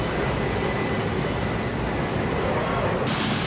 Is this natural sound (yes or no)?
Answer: yes